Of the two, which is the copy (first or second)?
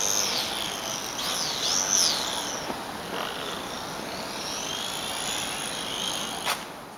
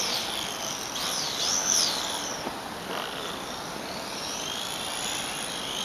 second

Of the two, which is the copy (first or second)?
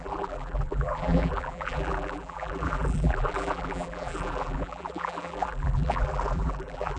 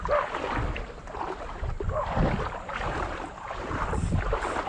first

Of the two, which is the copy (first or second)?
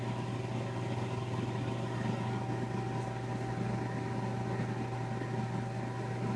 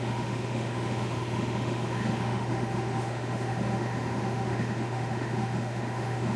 second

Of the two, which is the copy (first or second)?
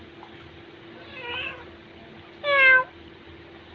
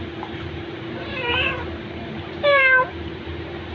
second